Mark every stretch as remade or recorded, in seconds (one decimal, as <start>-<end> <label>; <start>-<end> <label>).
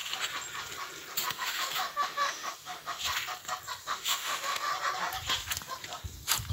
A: 0.0-1.3 recorded; 1.3-3.0 remade; 3.0-3.8 recorded; 3.8-4.7 remade; 4.7-6.5 recorded